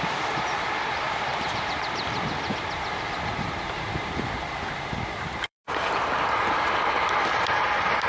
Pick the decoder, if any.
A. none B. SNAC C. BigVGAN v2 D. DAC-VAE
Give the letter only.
C